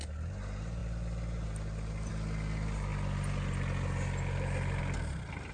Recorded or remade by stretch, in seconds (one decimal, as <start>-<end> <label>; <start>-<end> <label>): 0.0-5.5 recorded